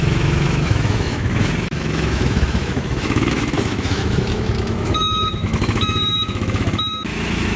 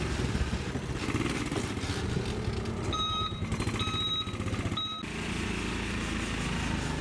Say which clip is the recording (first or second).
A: second